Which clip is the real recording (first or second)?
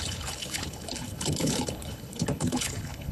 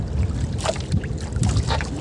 second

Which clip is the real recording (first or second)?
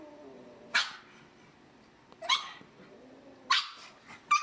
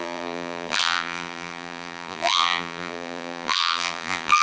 first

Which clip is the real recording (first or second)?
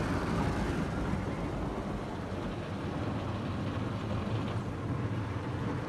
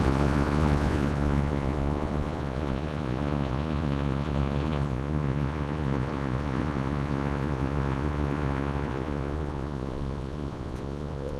first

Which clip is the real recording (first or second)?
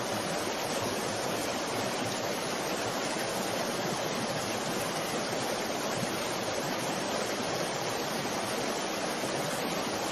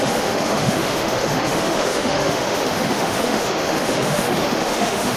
first